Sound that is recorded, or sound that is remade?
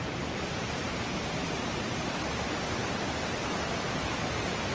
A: remade